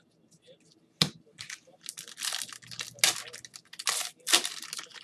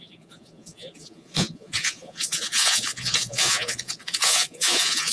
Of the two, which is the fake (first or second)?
second